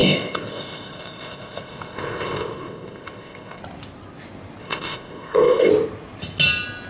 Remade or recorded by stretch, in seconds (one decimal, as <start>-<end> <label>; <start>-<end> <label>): 0.0-3.6 remade; 3.6-4.6 recorded; 4.6-5.7 remade; 5.7-6.9 recorded

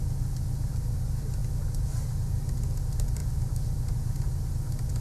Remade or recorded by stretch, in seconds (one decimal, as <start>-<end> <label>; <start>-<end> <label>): 0.0-5.0 recorded

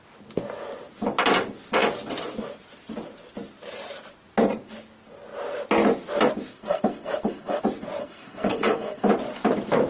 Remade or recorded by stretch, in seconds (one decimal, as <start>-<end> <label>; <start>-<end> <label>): 0.0-6.5 recorded; 6.5-7.6 remade; 7.6-8.0 recorded; 8.0-9.1 remade; 9.1-9.9 recorded

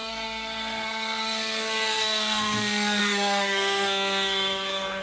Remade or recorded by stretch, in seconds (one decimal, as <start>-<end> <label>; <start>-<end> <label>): 0.0-5.0 remade

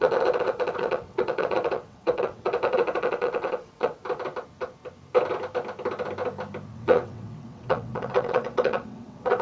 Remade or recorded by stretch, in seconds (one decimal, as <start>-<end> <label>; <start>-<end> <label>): 0.0-4.0 remade; 4.0-6.7 recorded; 6.7-9.4 remade